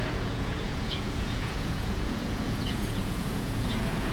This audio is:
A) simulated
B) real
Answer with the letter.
A